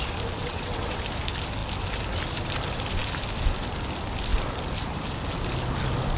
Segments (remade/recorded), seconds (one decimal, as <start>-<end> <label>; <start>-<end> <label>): 0.0-0.4 recorded; 0.4-1.0 remade; 1.0-6.2 recorded